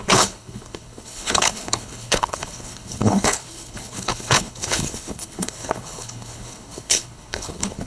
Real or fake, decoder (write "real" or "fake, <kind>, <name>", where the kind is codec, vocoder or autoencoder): fake, codec, HILCodec